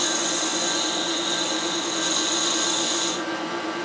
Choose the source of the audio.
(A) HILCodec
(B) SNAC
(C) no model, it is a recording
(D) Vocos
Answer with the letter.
D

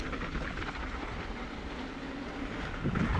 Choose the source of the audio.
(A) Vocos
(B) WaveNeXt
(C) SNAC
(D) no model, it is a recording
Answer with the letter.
D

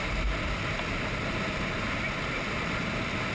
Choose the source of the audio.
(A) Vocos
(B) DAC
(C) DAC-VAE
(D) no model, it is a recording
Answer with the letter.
D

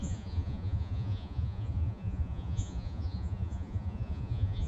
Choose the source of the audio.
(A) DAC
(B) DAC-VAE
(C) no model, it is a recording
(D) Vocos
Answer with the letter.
D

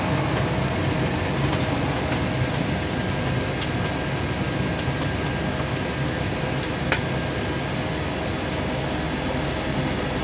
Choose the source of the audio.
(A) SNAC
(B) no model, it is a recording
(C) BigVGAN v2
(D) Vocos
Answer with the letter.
B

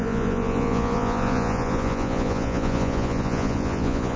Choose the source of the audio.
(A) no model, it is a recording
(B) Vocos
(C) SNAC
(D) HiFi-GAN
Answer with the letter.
B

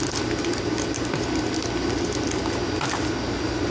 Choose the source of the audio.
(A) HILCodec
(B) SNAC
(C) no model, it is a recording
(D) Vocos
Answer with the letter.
C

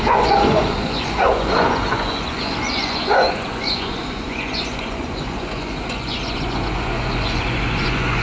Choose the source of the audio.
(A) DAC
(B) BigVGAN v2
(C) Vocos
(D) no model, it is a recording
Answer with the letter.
C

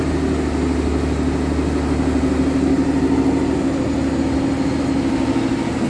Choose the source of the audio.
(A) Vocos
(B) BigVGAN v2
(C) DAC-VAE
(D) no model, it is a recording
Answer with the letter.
D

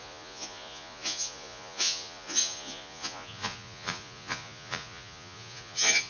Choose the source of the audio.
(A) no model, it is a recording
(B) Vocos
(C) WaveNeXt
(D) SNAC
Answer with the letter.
B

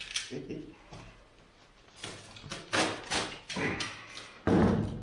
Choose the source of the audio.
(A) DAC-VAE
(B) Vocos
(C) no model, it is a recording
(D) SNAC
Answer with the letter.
C